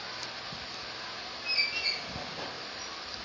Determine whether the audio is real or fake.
real